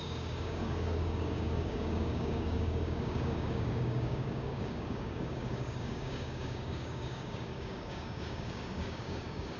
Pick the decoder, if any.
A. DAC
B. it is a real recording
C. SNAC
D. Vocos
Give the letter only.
A